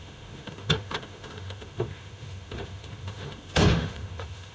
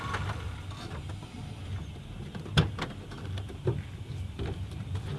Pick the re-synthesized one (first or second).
first